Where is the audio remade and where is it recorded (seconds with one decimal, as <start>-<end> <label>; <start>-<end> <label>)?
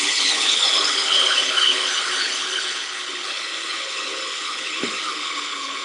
0.0-5.8 remade